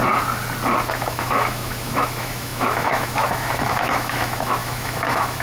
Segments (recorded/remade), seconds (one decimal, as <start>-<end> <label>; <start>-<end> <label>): 0.0-0.9 recorded; 0.9-5.4 remade